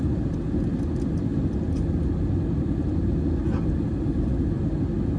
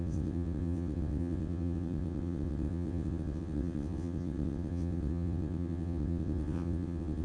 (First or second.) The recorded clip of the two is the first